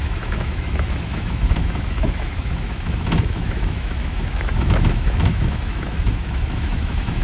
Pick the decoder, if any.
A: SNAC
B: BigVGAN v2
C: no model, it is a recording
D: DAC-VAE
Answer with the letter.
D